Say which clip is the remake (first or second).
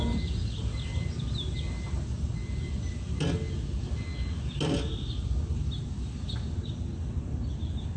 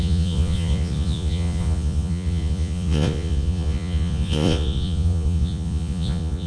second